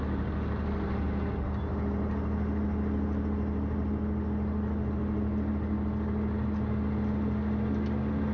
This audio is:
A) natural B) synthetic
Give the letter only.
A